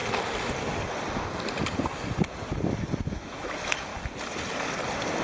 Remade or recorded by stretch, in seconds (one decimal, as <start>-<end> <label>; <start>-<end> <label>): 0.0-3.1 recorded; 3.1-3.9 remade; 3.9-5.2 recorded